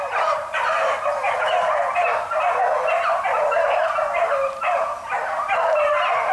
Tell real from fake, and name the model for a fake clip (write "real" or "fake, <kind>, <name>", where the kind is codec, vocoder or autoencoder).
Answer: real